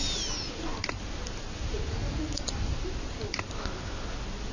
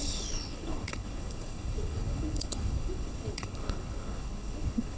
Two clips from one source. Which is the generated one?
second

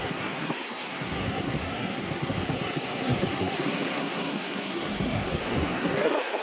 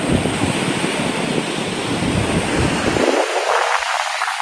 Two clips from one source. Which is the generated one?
first